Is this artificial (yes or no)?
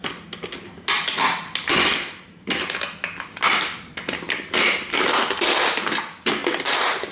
no